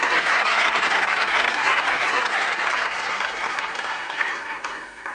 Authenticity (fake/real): fake